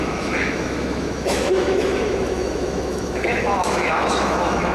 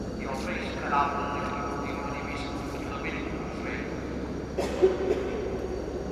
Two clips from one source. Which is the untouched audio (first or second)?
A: second